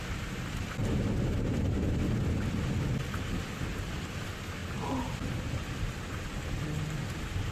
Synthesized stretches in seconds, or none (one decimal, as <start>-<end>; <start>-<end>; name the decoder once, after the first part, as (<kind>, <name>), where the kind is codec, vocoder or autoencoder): 4.6-5.5 (vocoder, BigVGAN v2)